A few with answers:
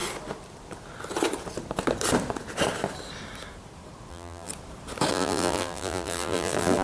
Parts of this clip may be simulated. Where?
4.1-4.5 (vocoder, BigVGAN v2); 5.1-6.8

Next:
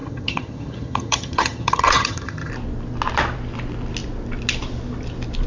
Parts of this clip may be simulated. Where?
0.0-2.5 (vocoder, HiFi-GAN)

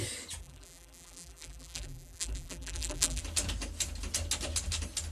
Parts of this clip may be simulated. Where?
0.4-3.2 (vocoder, BigVGAN v2)

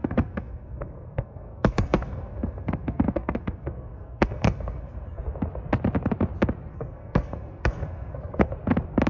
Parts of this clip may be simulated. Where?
0.0-5.2 (codec, SNAC); 6.7-8.5

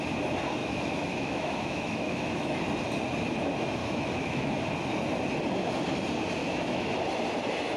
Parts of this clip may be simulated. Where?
0.6-2.6 (autoencoder, DAC-VAE); 3.8-4.6; 6.4-6.9

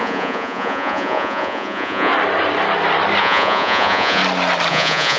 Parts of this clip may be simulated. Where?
0.0-2.1 (vocoder, Vocos); 3.2-4.2; 4.7-5.2

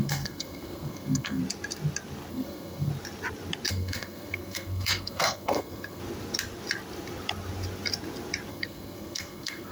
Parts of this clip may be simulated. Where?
0.0-1.4 (codec, SNAC); 2.3-2.9; 3.7-6.0; 8.5-9.7